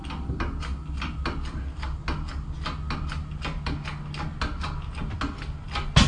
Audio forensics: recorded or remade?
recorded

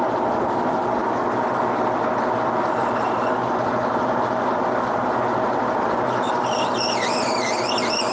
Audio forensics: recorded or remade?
recorded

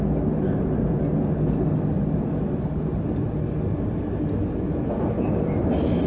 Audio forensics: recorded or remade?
recorded